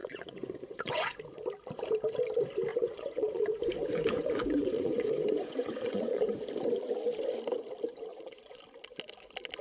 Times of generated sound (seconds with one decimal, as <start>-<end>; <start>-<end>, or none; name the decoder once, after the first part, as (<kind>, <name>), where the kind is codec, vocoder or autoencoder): 0.0-1.2 (vocoder, Vocos); 2.7-6.4; 8.1-8.6